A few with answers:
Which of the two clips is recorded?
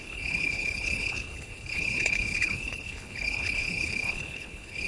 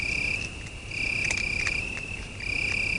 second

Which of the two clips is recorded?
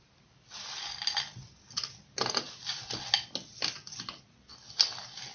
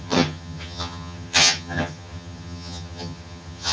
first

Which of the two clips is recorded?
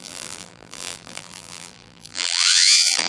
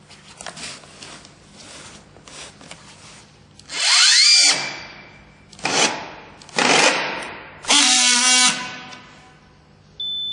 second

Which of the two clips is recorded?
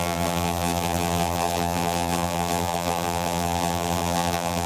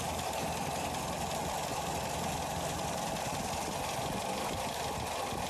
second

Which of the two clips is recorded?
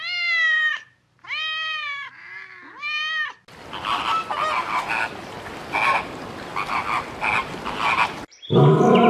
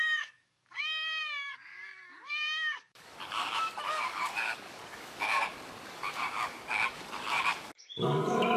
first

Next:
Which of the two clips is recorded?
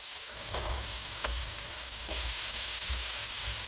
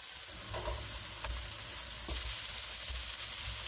second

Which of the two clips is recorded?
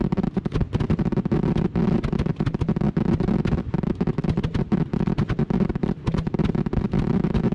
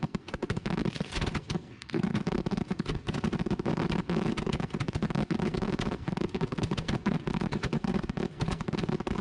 first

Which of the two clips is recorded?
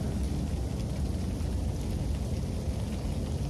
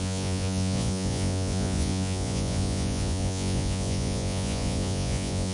first